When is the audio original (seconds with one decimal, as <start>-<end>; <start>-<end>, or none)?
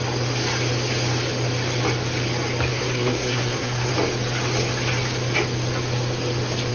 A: 0.0-2.7; 3.9-6.7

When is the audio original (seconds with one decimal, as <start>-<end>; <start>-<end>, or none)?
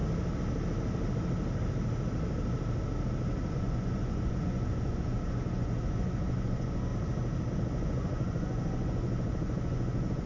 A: 0.0-3.5; 6.9-7.5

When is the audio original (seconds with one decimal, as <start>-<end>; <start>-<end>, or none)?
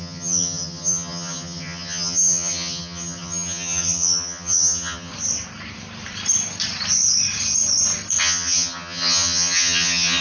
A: 5.1-8.2